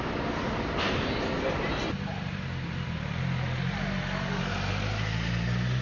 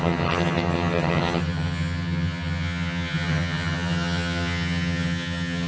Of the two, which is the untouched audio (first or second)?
first